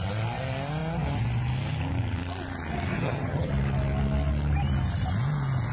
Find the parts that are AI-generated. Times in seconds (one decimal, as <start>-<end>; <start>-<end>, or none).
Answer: 2.9-3.5